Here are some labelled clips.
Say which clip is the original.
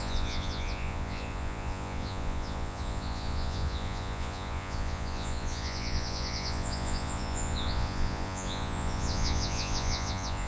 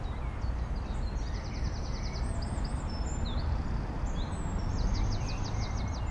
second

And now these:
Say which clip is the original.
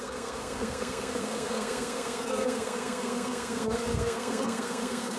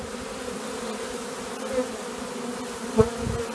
second